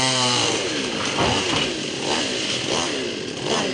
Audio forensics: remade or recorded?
remade